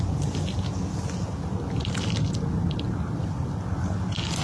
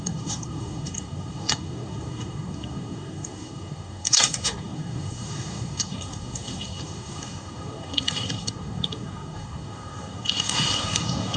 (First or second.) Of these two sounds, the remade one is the second